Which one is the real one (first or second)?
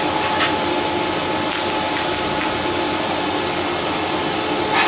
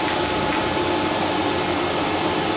first